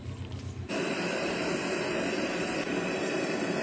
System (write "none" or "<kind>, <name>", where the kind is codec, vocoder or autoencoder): none